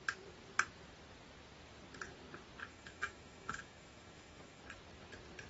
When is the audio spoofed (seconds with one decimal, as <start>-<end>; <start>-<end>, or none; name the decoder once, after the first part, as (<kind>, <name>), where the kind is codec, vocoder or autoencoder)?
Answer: 2.7-4.6 (autoencoder, DAC-VAE)